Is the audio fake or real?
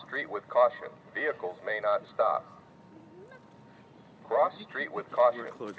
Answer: real